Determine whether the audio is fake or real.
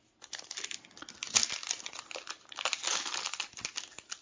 real